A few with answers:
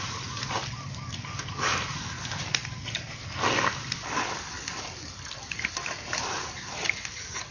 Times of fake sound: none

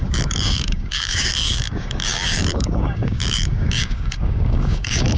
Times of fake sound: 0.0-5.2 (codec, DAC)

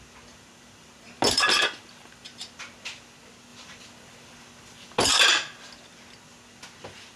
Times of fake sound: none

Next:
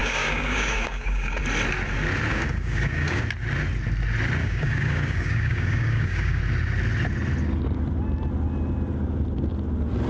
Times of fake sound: 0.0-1.4 (codec, DAC); 2.3-3.2; 4.4-6.4

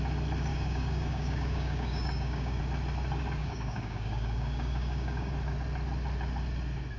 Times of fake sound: 0.5-2.6 (codec, DAC); 3.4-5.3

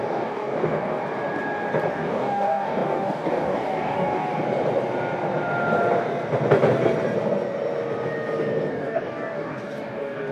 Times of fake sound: 0.0-1.0 (codec, DAC); 1.9-4.3; 8.7-10.3

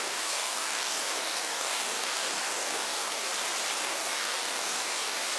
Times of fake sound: 0.0-3.3 (codec, DAC); 3.8-5.4

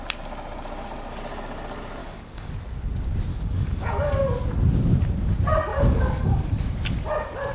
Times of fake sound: 2.0-2.5 (codec, DAC); 3.3-4.2; 5.7-6.6